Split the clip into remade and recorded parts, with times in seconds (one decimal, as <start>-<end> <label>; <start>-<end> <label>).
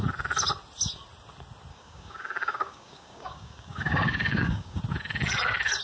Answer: 0.0-1.7 recorded; 1.7-4.8 remade; 4.8-5.8 recorded